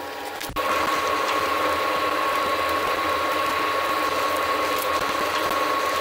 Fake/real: real